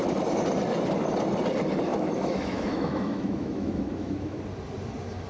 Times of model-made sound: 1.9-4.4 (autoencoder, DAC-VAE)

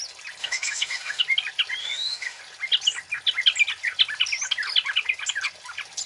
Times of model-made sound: 0.4-1.2 (autoencoder, DAC-VAE); 1.8-2.4

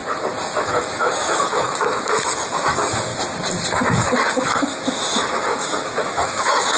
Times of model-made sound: 0.6-3.1 (autoencoder, DAC-VAE); 3.7-6.8

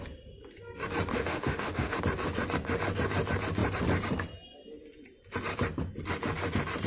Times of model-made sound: 1.1-2.0 (autoencoder, DAC-VAE)

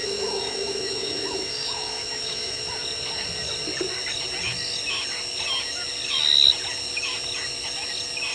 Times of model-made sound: 0.0-2.7 (autoencoder, DAC-VAE)

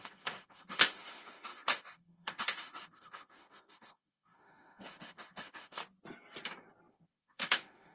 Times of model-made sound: 0.0-5.8 (autoencoder, DAC-VAE); 6.9-7.9